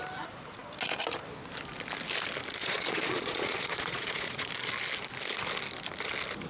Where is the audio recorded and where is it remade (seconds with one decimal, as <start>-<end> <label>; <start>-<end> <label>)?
0.0-2.6 recorded; 2.6-4.5 remade; 4.5-6.5 recorded